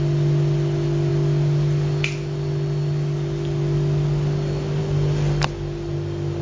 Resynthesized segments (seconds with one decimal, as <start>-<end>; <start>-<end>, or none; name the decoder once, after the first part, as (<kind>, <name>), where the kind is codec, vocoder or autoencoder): none